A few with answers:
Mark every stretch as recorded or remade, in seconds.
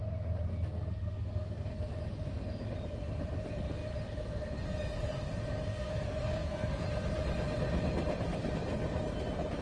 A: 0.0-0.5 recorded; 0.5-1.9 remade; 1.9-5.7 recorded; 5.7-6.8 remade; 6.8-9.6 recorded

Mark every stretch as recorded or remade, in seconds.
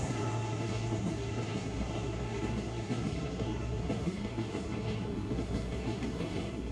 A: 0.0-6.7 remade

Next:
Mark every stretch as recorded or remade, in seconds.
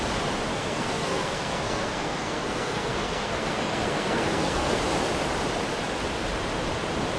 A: 0.0-0.5 recorded; 0.5-4.8 remade; 4.8-7.2 recorded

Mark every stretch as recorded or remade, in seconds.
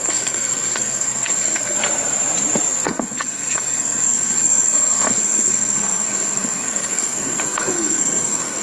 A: 0.0-1.8 remade; 1.8-2.7 recorded; 2.7-8.6 remade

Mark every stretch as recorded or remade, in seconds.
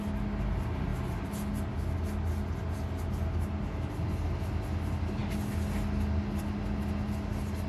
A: 0.0-7.7 recorded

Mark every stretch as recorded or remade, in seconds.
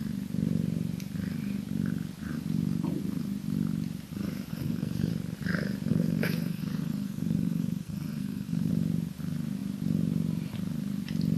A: 0.0-4.5 recorded; 4.5-5.1 remade; 5.1-5.9 recorded; 5.9-8.7 remade; 8.7-11.4 recorded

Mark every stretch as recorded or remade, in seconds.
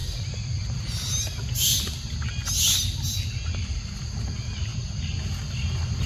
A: 0.0-6.1 recorded